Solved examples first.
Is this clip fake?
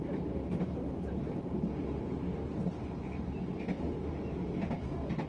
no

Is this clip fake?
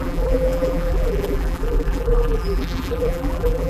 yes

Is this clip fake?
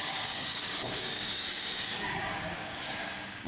yes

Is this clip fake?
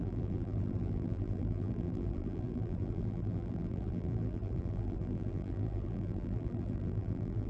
yes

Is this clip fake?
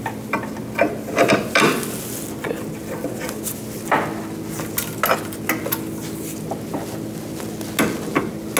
no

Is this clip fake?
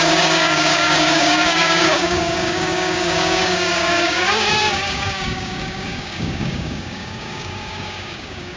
yes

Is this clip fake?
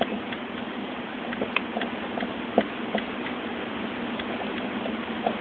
no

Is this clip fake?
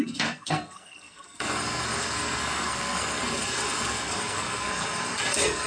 yes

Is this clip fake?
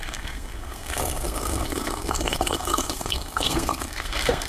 yes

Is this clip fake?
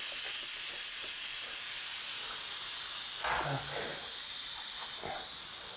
no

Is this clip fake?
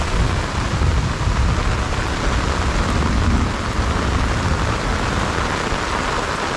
no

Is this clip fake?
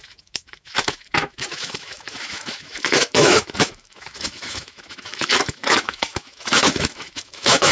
yes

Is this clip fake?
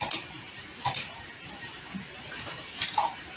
yes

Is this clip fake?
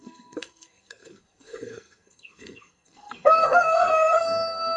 yes